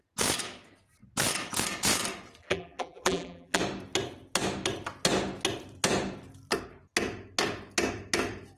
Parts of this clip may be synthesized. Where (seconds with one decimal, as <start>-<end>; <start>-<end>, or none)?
2.4-3.6